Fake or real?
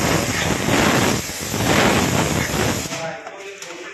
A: real